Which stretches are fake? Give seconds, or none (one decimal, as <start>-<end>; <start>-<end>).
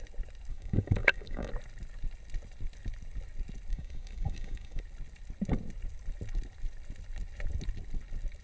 0.5-1.5; 3.7-4.8